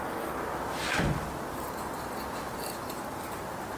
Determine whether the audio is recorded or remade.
recorded